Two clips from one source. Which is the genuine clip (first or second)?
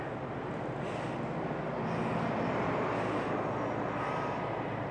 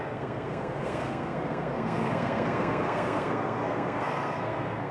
first